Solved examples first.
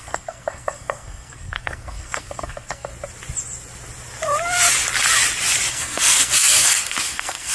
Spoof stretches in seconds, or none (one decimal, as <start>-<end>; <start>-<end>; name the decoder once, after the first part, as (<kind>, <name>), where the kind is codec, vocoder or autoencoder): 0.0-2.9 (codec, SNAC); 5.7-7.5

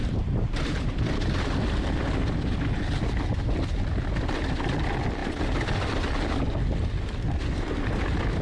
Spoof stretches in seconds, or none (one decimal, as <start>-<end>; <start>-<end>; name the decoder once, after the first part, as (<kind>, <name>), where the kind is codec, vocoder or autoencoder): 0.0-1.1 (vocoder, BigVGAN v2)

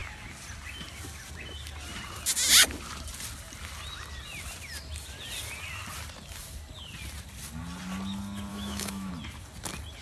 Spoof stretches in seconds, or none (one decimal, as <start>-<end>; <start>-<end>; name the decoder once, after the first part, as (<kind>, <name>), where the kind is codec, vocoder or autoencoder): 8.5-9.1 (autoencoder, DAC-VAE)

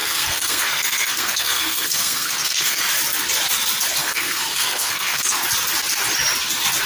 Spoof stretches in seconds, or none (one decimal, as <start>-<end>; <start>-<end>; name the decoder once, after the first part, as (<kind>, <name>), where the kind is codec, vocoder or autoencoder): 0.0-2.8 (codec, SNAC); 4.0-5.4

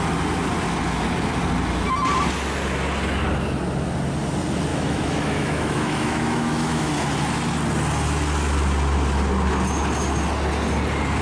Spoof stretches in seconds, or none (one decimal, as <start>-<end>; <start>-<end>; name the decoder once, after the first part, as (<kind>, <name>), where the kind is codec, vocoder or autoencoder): 4.7-6.9 (autoencoder, DAC-VAE)

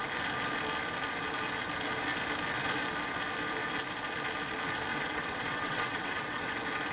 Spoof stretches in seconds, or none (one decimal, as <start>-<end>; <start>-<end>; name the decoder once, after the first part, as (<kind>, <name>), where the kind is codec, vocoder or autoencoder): 4.9-6.5 (vocoder, WaveNeXt)